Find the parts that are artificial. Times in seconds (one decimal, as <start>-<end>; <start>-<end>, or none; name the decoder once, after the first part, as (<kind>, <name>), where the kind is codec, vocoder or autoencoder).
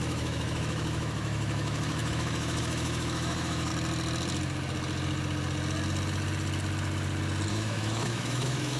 0.0-3.7 (autoencoder, DAC-VAE); 7.5-8.8